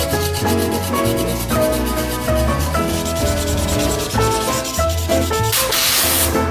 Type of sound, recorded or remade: remade